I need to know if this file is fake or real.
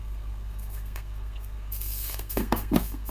fake